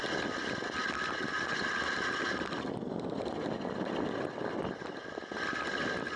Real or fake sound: real